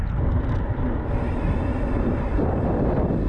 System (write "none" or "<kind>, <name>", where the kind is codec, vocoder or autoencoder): none